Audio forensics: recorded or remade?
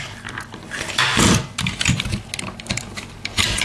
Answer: recorded